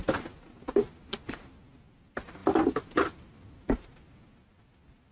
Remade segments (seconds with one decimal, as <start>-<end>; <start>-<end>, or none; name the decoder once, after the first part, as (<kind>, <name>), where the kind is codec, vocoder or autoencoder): none